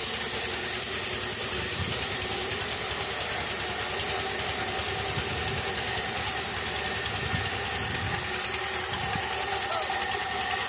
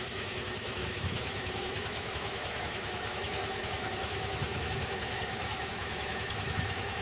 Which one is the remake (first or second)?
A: second